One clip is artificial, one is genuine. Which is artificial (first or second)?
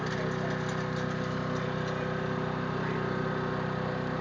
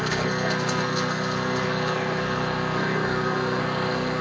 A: second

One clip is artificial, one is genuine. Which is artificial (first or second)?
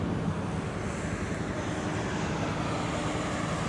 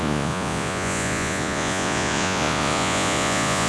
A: second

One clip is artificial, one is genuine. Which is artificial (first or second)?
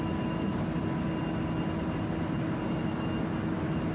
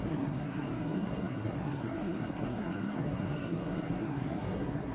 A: second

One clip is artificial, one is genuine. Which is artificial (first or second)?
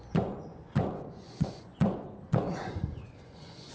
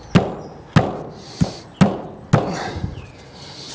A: first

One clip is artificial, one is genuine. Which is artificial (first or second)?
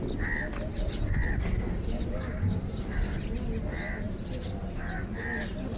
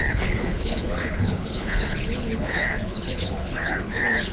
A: second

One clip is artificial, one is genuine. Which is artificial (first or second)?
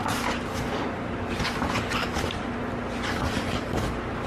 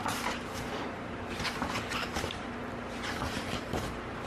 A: second